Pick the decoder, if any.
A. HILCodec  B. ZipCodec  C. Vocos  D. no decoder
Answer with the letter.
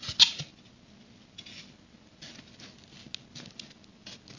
D